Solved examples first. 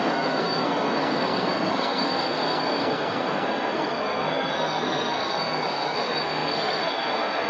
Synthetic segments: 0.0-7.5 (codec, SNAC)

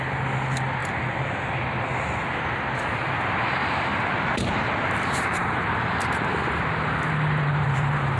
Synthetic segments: 0.8-1.5 (vocoder, BigVGAN v2); 3.6-8.2

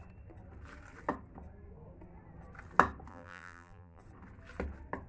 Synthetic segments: 3.1-4.0 (vocoder, BigVGAN v2)